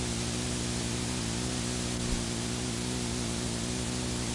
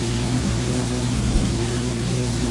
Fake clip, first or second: second